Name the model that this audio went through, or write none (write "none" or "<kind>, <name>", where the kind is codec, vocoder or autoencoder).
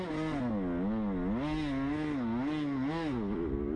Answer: none